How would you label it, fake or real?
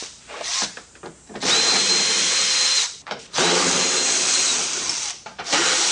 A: fake